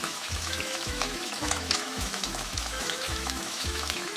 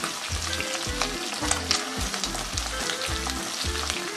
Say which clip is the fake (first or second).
first